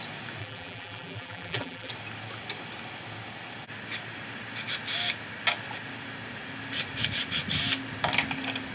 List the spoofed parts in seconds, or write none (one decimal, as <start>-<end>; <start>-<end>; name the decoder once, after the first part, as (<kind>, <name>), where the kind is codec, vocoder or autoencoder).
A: 0.4-1.9 (vocoder, BigVGAN v2)